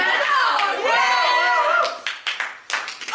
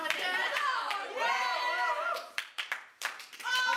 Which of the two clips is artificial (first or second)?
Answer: second